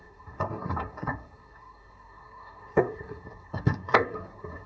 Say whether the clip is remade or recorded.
remade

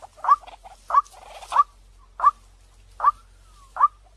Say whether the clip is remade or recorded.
recorded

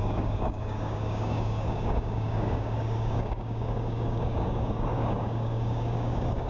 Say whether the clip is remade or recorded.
remade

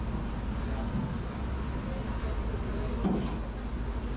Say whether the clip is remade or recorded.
recorded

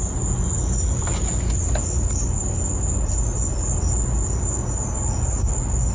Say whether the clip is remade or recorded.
recorded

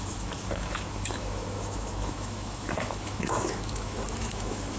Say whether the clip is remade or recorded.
remade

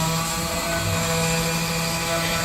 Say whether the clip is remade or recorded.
recorded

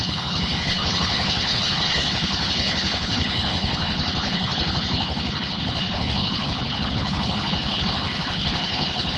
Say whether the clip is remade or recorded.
remade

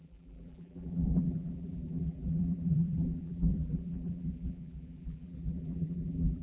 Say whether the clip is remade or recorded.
remade